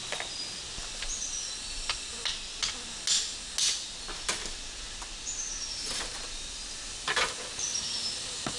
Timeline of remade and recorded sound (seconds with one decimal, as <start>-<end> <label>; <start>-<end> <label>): 0.0-8.6 recorded